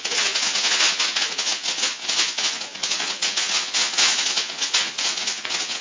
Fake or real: fake